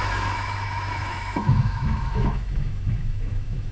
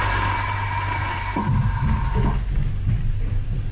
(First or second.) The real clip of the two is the second